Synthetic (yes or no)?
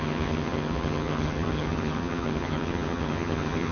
yes